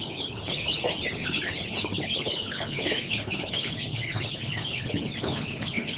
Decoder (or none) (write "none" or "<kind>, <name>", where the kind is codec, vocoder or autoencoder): codec, HILCodec